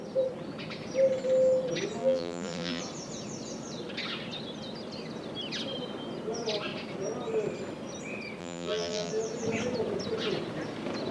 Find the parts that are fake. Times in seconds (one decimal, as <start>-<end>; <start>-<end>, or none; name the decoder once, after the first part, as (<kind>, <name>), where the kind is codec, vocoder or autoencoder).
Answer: 2.0-2.8 (vocoder, BigVGAN v2); 8.4-9.1